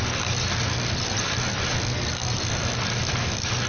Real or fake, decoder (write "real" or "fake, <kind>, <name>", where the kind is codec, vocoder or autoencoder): real